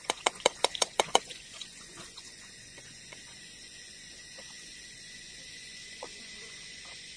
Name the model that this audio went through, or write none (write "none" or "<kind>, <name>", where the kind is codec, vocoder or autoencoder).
vocoder, Vocos